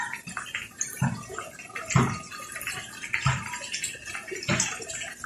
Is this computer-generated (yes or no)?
no